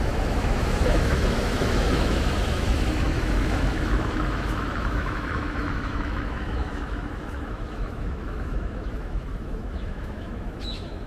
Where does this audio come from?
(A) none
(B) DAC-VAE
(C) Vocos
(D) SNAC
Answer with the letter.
B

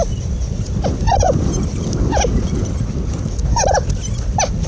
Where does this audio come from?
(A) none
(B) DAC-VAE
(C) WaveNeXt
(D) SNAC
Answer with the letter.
A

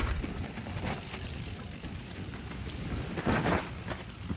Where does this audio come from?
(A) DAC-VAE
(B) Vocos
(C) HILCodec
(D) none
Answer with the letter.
D